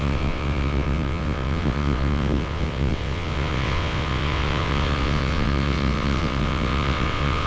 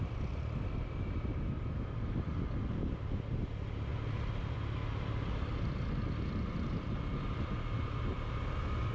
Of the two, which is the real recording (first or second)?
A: second